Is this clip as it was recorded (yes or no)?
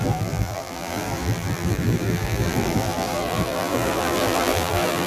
no